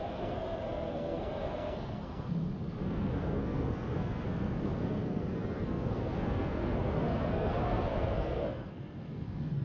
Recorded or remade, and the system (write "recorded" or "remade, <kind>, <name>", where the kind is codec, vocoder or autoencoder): remade, codec, SNAC